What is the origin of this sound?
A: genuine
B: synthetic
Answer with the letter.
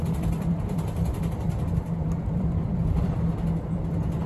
B